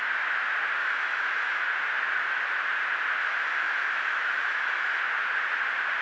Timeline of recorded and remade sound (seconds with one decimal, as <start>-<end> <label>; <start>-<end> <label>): 0.0-0.8 recorded; 0.8-1.6 remade; 1.6-3.2 recorded; 3.2-5.0 remade; 5.0-6.0 recorded